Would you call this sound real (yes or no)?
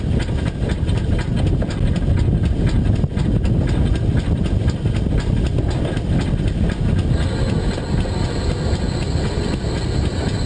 yes